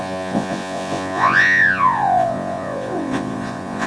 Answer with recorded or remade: remade